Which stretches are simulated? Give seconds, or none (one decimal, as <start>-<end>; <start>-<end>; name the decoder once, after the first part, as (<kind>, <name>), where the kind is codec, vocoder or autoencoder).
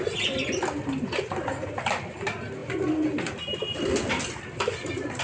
none